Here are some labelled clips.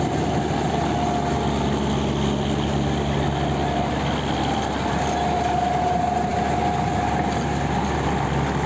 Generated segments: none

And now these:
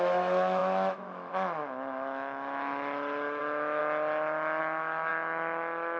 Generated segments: 0.0-3.8 (autoencoder, DAC-VAE); 4.6-6.0

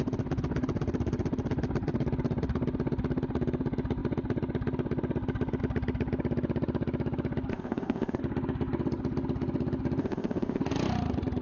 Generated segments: 7.5-8.2 (codec, ZipCodec); 10.0-10.6

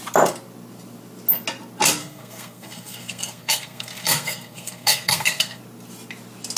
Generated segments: 2.0-5.6 (codec, SNAC)

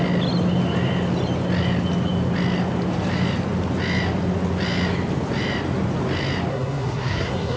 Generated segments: 6.5-7.6 (codec, SNAC)

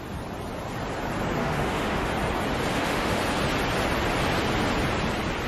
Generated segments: 1.4-2.1 (autoencoder, DAC-VAE); 2.7-3.2